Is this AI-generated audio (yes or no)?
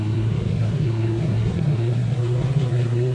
yes